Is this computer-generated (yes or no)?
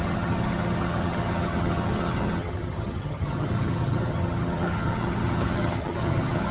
yes